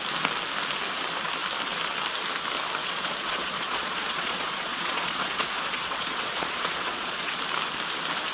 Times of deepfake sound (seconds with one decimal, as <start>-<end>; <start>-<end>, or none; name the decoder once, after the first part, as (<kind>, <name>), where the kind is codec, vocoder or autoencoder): 2.8-7.4 (vocoder, Vocos)